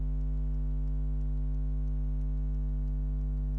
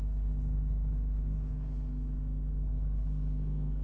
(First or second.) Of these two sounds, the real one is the first